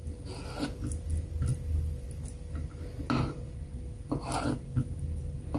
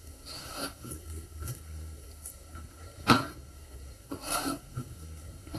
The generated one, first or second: second